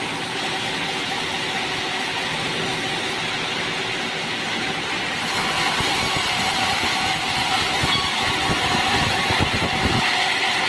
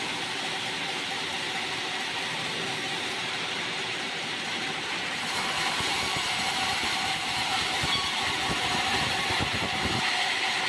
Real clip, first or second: first